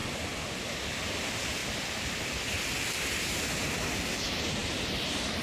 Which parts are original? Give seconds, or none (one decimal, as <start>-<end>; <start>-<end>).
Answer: 0.8-5.4